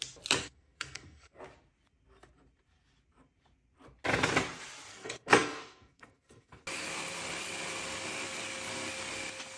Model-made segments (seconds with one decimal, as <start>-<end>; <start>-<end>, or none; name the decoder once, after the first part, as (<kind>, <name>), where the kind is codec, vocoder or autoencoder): 0.4-1.4 (codec, SNAC); 4.9-6.6